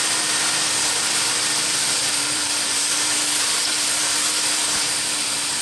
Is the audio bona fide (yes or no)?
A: no